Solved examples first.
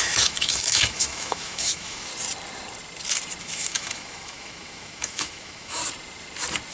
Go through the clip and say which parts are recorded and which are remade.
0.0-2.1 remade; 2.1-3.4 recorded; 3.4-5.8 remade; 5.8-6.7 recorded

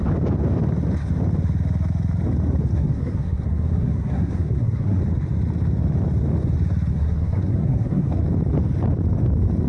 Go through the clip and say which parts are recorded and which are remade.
0.0-2.7 recorded; 2.7-5.0 remade; 5.0-6.9 recorded; 6.9-8.2 remade; 8.2-9.7 recorded

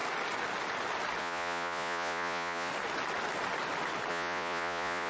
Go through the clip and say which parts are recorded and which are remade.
0.0-1.2 recorded; 1.2-2.7 remade; 2.7-4.1 recorded; 4.1-5.1 remade

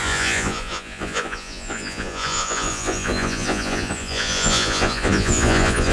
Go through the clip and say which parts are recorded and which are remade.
0.0-5.9 remade

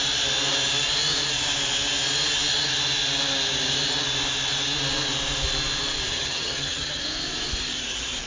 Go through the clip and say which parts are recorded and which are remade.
0.0-6.1 recorded; 6.1-7.0 remade; 7.0-8.3 recorded

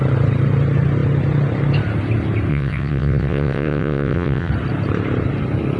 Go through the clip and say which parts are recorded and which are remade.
0.0-2.5 recorded; 2.5-4.5 remade; 4.5-5.8 recorded

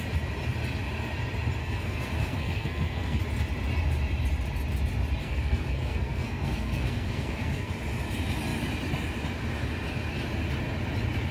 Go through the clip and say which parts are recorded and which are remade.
0.0-1.6 recorded; 1.6-3.2 remade; 3.2-5.2 recorded; 5.2-7.7 remade; 7.7-11.3 recorded

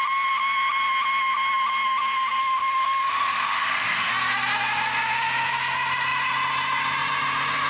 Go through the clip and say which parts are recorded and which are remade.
0.0-2.4 recorded; 2.4-4.1 remade; 4.1-7.7 recorded